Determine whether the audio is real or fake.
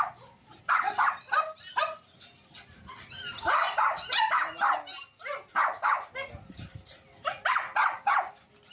real